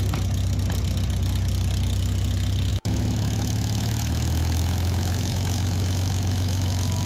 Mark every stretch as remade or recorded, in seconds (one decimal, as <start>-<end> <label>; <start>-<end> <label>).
0.0-2.7 recorded; 2.7-7.1 remade